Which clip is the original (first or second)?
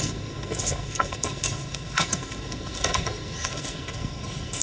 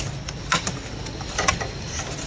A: second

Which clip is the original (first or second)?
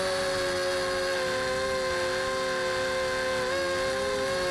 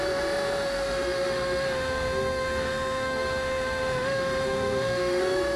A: first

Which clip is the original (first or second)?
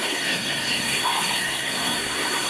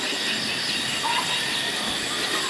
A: second